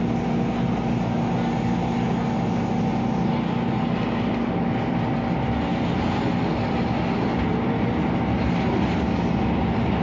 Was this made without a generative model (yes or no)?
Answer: yes